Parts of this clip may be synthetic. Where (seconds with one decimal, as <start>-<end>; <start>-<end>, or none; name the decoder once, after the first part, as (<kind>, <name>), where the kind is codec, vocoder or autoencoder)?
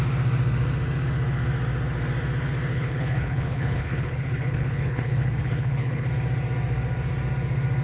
2.7-6.1 (codec, HILCodec)